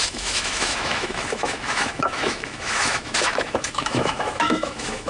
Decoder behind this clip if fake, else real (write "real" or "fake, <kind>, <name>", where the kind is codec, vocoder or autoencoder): fake, autoencoder, DAC-VAE